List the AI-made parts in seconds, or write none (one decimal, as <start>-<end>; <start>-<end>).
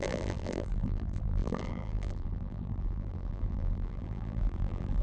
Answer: 0.0-5.0